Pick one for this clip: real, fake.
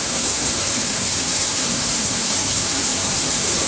fake